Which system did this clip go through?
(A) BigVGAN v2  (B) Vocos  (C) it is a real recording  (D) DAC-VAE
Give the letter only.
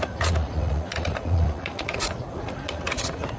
B